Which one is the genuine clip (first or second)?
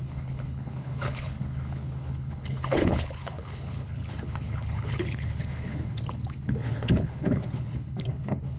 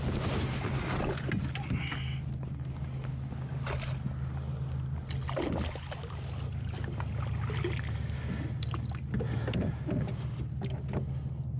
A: second